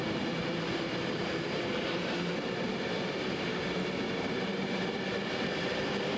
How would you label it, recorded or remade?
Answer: remade